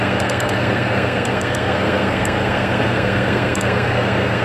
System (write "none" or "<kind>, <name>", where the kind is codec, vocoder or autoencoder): codec, SNAC